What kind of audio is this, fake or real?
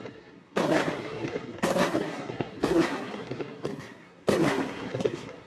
fake